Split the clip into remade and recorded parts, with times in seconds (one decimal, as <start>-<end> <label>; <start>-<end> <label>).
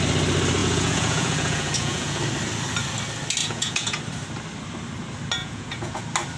0.0-0.6 recorded; 0.6-2.2 remade; 2.2-3.4 recorded; 3.4-4.0 remade; 4.0-5.4 recorded; 5.4-6.0 remade; 6.0-6.4 recorded